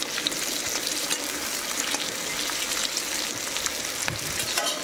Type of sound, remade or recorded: recorded